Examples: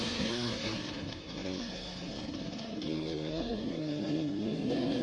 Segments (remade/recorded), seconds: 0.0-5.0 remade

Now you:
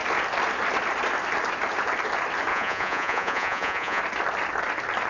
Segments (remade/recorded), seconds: 0.0-2.5 recorded; 2.5-4.0 remade; 4.0-5.1 recorded